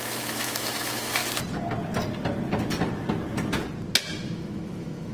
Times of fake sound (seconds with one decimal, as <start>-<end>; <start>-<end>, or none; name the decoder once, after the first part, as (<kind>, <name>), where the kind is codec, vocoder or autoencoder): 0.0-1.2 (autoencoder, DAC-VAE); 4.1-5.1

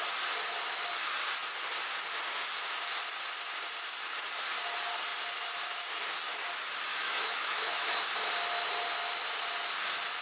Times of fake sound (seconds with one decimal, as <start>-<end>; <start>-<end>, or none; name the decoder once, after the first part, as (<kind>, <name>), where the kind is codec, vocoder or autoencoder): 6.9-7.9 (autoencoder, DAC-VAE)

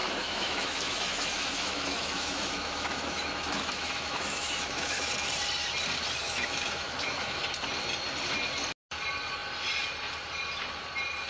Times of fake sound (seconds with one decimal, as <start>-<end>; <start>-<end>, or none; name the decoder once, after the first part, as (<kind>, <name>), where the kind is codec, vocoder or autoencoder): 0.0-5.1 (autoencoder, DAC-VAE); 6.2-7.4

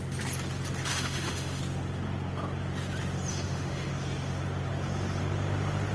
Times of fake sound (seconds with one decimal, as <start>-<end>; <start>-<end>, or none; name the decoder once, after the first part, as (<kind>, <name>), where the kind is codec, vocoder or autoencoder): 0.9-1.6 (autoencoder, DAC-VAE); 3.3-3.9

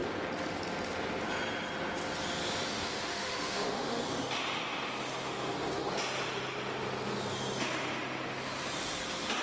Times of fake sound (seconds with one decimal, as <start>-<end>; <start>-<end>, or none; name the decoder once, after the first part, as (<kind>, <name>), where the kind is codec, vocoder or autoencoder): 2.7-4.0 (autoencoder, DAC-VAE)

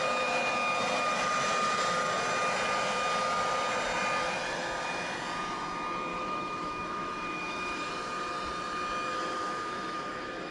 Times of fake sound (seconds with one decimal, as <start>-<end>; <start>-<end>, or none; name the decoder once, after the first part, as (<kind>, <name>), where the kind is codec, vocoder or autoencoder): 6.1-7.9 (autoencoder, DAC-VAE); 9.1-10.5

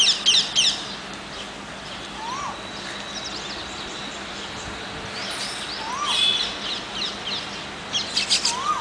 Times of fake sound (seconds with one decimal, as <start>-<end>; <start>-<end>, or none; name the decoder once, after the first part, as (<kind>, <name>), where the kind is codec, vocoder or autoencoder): none